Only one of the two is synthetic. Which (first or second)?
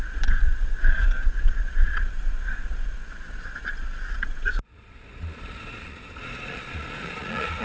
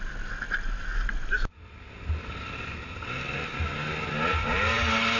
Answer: first